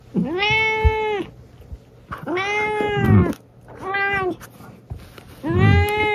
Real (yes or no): yes